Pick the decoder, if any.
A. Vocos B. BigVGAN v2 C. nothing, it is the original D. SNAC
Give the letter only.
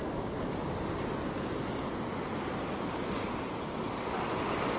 C